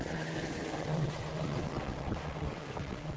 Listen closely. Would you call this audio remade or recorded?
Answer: remade